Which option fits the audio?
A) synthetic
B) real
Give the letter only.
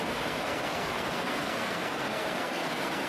A